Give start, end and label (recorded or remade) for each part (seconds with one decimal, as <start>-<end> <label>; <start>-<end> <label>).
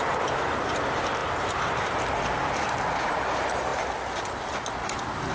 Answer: 0.0-5.3 recorded